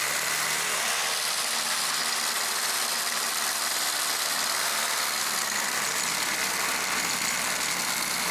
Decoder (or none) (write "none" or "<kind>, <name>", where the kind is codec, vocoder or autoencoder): none